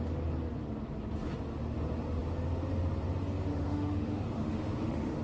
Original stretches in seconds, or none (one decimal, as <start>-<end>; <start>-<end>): 0.0-3.5